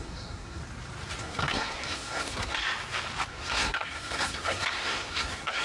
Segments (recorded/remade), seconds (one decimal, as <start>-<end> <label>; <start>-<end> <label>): 0.0-0.6 remade; 0.6-1.2 recorded; 1.2-2.6 remade; 2.6-3.3 recorded; 3.3-5.6 remade